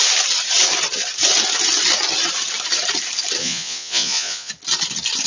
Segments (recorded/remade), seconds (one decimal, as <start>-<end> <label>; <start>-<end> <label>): 0.0-3.4 recorded; 3.4-4.5 remade; 4.5-5.3 recorded